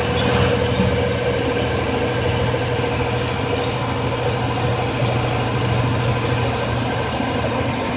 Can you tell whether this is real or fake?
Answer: real